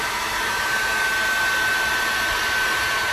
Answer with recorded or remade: recorded